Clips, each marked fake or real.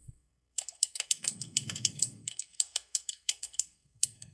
fake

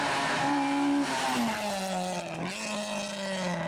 real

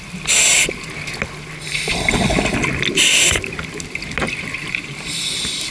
real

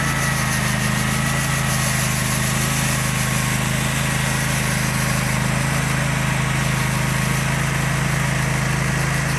real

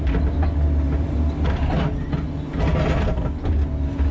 real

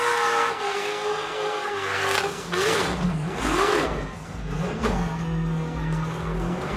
fake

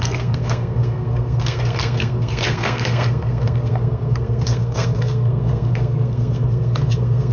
fake